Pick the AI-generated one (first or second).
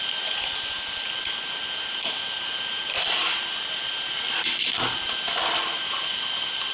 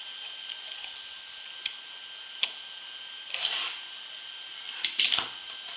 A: first